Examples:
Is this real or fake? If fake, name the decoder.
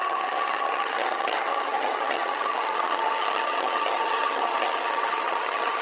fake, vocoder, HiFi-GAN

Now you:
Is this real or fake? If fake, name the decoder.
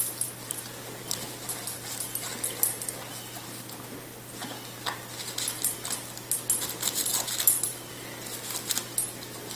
real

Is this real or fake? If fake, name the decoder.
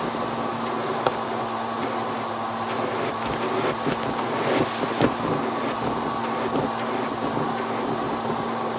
real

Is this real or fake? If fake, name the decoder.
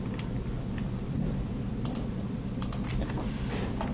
fake, vocoder, BigVGAN v2